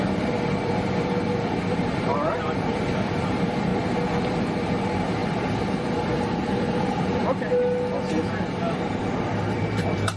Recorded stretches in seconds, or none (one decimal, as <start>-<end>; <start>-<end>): 3.7-4.2; 5.2-6.5; 7.2-9.0